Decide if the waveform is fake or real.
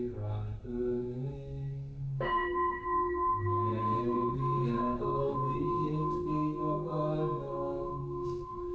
fake